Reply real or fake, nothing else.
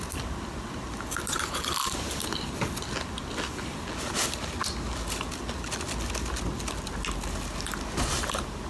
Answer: real